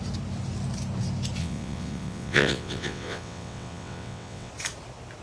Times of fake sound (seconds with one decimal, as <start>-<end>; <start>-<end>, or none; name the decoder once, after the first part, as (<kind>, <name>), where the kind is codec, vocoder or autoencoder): 1.4-4.5 (vocoder, WaveNeXt)